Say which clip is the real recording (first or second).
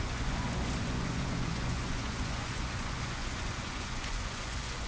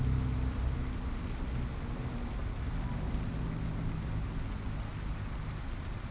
second